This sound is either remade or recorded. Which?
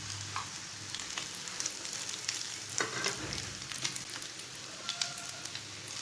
recorded